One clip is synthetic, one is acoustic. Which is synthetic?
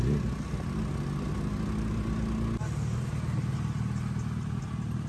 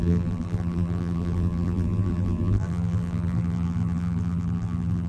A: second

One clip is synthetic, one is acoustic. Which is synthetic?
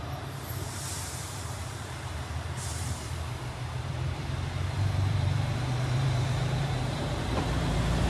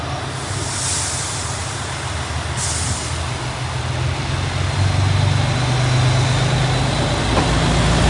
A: first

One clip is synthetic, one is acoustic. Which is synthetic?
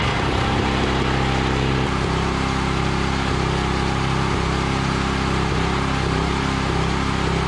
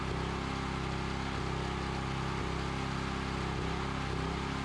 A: first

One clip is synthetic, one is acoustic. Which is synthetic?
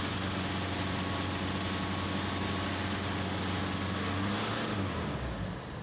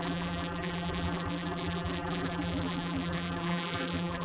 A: second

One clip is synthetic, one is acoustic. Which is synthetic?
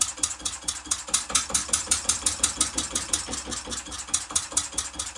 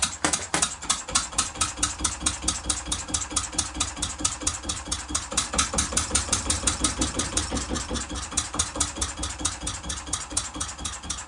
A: second